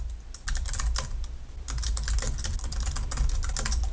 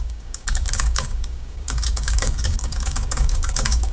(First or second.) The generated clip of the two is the second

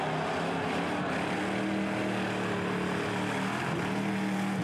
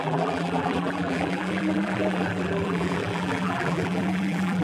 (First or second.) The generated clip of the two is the second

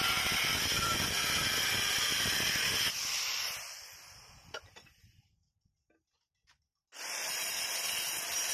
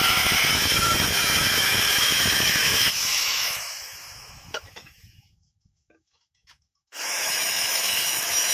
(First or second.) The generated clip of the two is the second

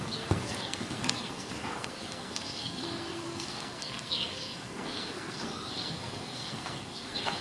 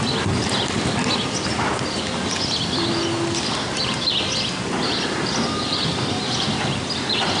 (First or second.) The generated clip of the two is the first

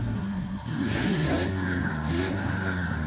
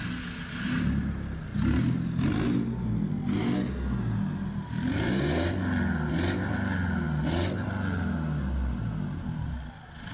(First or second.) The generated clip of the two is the first